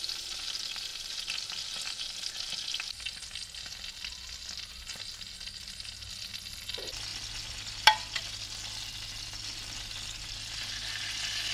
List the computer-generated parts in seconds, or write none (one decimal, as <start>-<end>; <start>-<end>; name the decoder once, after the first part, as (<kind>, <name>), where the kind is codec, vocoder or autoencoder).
none